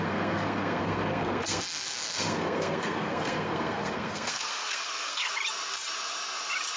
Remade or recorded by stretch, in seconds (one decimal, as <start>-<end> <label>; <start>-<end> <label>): 0.0-5.3 remade; 5.3-6.8 recorded